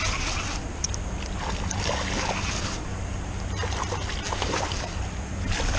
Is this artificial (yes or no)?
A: no